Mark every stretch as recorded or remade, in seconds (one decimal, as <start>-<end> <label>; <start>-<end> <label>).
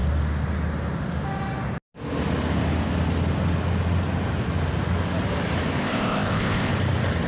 0.0-5.8 recorded; 5.8-6.7 remade; 6.7-7.3 recorded